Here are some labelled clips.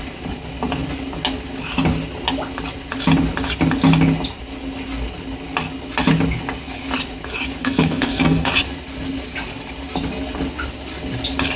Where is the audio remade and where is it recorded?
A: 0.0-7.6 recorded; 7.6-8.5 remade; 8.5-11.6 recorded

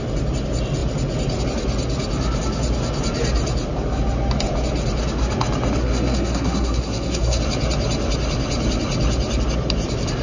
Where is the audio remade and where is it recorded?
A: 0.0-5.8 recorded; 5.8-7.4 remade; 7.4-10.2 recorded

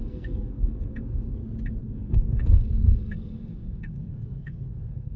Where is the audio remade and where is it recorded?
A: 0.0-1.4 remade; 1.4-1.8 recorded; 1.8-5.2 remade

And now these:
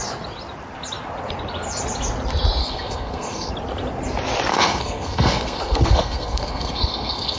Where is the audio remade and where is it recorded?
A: 0.0-2.6 recorded; 2.6-3.5 remade; 3.5-4.5 recorded; 4.5-7.4 remade

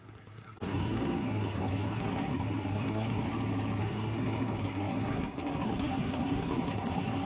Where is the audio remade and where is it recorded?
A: 0.0-3.2 remade; 3.2-3.8 recorded; 3.8-7.2 remade

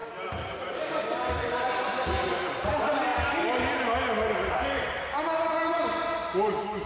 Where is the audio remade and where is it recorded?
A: 0.0-6.9 recorded

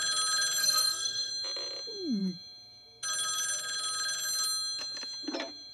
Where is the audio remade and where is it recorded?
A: 0.0-0.6 recorded; 0.6-1.3 remade; 1.3-5.7 recorded

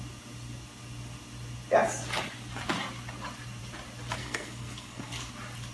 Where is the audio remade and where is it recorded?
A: 0.0-4.2 recorded; 4.2-5.3 remade; 5.3-5.7 recorded